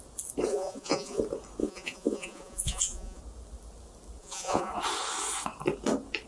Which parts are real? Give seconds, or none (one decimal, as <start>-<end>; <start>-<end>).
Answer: 0.0-0.5; 1.2-1.6; 3.2-4.2; 4.7-6.3